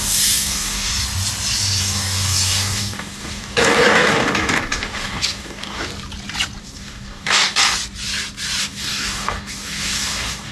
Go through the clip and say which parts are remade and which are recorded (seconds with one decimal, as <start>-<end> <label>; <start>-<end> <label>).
0.0-0.9 remade; 0.9-1.8 recorded; 1.8-5.9 remade; 5.9-6.6 recorded; 6.6-7.6 remade; 7.6-8.6 recorded; 8.6-10.5 remade